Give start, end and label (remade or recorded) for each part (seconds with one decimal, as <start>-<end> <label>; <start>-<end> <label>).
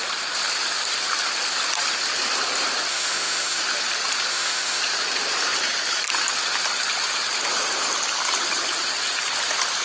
0.0-2.9 recorded; 2.9-3.6 remade; 3.6-4.3 recorded; 4.3-4.8 remade; 4.8-9.8 recorded